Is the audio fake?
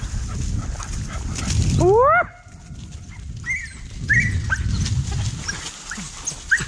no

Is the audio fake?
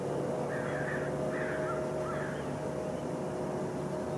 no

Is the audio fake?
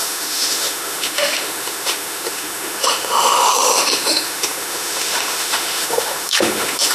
yes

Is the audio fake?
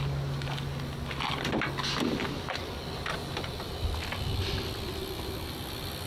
no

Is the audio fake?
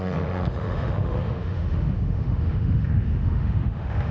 yes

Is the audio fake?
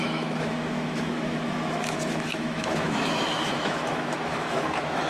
yes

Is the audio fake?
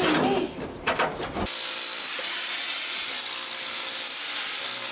no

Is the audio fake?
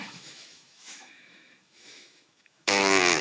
yes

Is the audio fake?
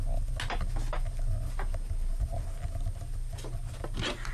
no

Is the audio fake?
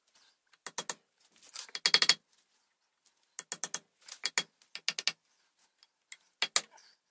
no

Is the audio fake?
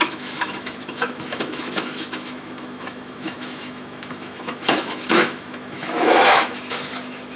yes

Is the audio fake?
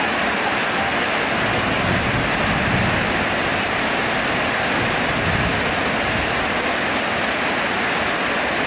no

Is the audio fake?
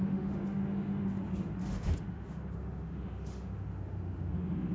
yes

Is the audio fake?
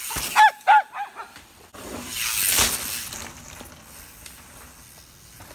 no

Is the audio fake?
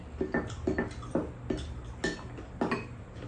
no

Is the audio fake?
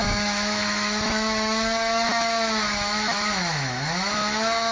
yes